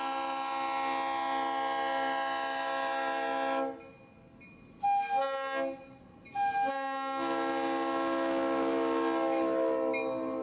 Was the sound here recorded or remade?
recorded